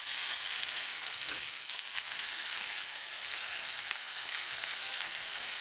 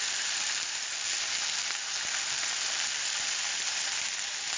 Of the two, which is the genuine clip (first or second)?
second